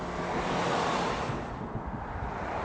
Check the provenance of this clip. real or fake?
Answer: real